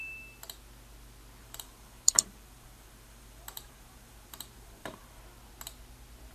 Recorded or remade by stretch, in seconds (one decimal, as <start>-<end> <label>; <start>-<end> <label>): 0.0-1.4 recorded; 1.4-5.2 remade; 5.2-6.3 recorded